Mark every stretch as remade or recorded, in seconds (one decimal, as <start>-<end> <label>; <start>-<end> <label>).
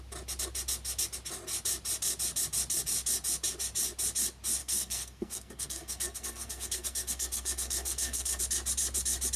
0.0-4.6 recorded; 4.6-8.4 remade; 8.4-9.4 recorded